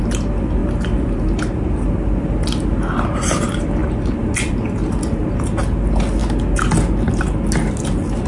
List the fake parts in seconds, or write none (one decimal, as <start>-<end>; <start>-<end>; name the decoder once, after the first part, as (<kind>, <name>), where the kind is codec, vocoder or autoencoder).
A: none